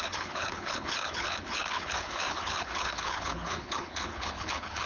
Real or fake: fake